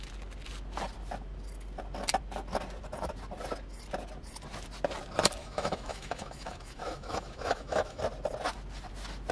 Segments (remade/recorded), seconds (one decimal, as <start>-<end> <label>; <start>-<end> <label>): 0.0-5.4 recorded; 5.4-8.0 remade; 8.0-9.3 recorded